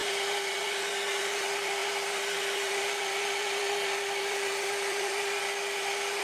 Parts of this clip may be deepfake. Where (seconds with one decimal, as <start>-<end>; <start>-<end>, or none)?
0.0-0.8; 1.8-5.4